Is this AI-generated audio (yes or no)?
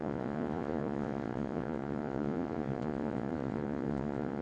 yes